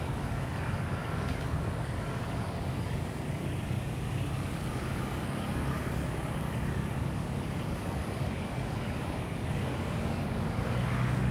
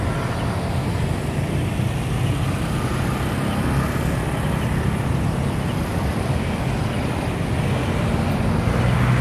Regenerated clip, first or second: first